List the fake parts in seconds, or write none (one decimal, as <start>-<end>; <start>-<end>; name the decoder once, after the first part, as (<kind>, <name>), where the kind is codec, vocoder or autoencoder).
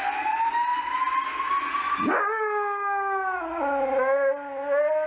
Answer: none